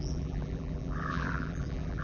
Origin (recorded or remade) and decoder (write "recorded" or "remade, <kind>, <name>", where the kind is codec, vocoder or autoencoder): remade, vocoder, BigVGAN v2